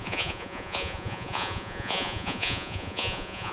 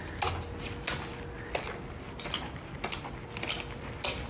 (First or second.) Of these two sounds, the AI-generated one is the first